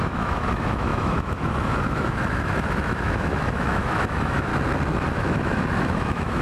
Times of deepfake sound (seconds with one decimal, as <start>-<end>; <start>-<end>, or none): 0.0-4.5; 5.1-6.4